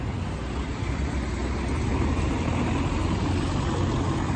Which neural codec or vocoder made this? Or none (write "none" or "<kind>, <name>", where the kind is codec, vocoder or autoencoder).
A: none